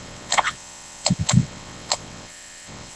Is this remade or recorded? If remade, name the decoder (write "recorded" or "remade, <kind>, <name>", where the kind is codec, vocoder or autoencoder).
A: remade, vocoder, WaveNeXt